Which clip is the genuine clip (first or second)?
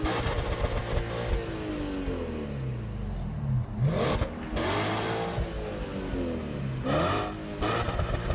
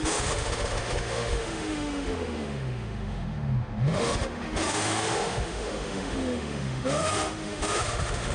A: first